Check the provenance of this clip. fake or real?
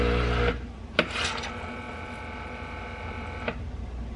real